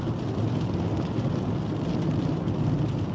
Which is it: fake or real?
real